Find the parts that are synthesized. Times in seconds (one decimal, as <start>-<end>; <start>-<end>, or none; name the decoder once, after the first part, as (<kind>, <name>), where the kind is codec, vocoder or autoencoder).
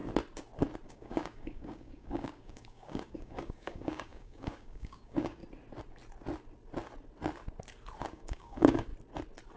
0.9-5.4 (codec, DAC); 8.1-8.9